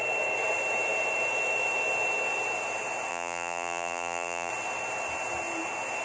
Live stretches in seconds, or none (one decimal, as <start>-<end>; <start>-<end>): 0.0-3.1; 4.5-6.0